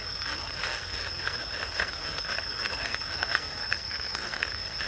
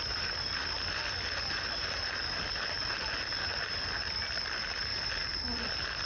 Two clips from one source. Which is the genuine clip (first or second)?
second